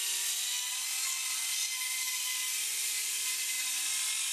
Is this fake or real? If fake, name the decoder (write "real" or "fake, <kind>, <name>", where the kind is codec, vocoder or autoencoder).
real